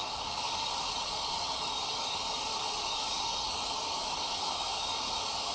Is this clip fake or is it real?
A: fake